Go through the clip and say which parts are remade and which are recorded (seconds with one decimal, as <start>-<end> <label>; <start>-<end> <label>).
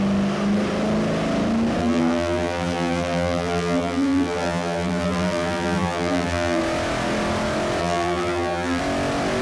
0.0-1.8 recorded; 1.8-6.6 remade; 6.6-7.8 recorded; 7.8-8.8 remade; 8.8-9.4 recorded